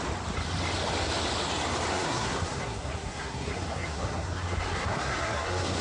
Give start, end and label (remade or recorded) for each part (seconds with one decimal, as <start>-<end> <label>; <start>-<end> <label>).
0.0-1.9 recorded; 1.9-5.8 remade